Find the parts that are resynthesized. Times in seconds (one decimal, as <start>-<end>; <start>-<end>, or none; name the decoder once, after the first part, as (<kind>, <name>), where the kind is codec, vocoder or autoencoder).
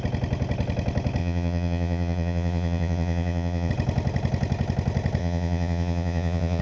1.2-3.7 (vocoder, Vocos); 5.2-6.6